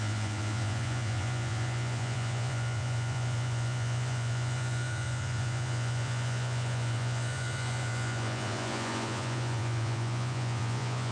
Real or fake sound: fake